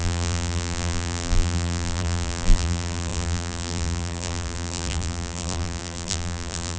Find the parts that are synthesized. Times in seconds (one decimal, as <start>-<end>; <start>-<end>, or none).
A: 0.0-6.8